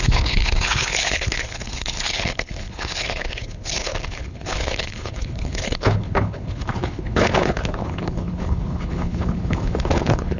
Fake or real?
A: fake